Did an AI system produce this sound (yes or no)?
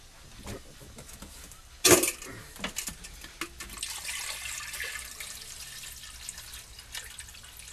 no